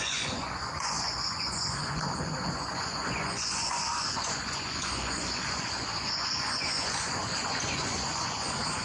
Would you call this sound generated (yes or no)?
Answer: yes